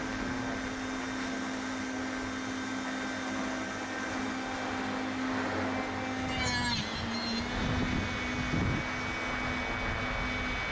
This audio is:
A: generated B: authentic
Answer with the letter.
B